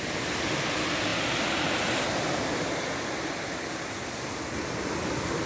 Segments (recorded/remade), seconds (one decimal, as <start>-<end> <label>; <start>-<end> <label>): 0.0-5.5 recorded